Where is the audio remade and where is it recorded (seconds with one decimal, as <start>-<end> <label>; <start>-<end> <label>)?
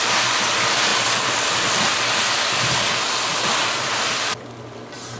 0.0-0.9 recorded; 0.9-2.7 remade; 2.7-5.2 recorded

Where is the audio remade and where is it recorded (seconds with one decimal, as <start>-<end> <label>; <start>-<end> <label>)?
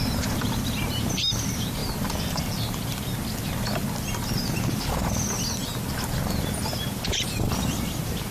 0.0-1.8 remade; 1.8-6.7 recorded; 6.7-8.3 remade